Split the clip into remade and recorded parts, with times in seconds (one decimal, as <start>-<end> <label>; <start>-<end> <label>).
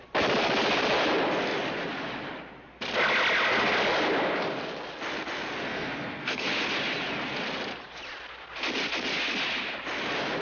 0.0-5.7 recorded; 5.7-6.5 remade; 6.5-10.4 recorded